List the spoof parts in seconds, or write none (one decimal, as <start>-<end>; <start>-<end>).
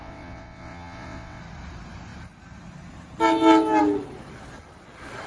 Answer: 0.0-1.4